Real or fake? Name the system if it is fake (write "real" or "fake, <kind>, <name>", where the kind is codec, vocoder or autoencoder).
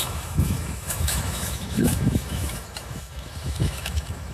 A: fake, autoencoder, DAC-VAE